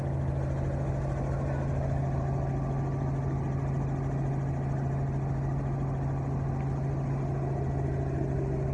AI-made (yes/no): no